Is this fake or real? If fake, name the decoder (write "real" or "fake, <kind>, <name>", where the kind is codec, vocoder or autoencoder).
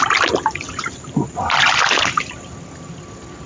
real